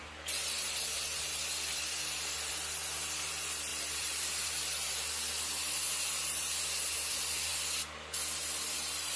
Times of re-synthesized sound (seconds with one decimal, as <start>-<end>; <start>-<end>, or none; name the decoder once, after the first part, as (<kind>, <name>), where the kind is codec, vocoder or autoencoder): 1.7-2.5 (vocoder, BigVGAN v2); 3.7-5.1